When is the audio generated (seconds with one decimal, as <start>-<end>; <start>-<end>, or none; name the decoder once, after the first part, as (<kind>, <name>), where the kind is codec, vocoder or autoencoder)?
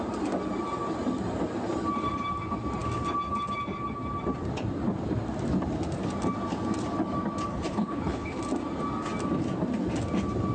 7.5-8.4 (codec, HILCodec)